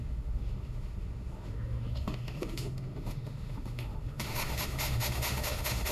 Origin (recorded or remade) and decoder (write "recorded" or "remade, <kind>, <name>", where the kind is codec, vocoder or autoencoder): remade, autoencoder, DAC-VAE